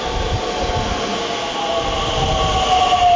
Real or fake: real